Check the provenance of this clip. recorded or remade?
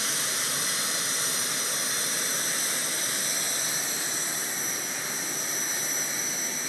recorded